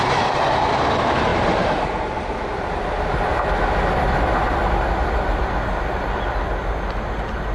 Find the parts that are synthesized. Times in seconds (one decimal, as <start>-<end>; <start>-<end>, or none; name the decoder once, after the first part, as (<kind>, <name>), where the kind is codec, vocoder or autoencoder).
none